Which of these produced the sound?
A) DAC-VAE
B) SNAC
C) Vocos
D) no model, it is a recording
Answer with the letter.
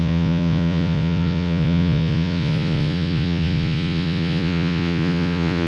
C